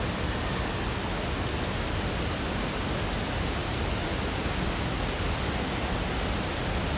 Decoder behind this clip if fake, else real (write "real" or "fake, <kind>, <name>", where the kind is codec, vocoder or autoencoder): real